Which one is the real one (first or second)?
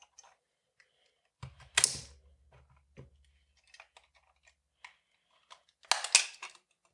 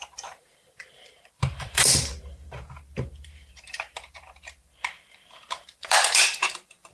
first